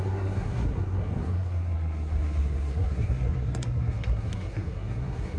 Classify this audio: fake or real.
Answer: fake